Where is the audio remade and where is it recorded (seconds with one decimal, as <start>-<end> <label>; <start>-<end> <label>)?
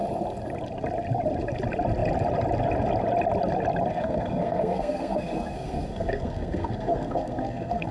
0.0-3.9 recorded; 3.9-7.9 remade